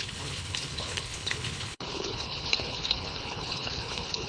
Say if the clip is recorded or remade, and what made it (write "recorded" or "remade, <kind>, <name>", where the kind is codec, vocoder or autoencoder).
remade, codec, HILCodec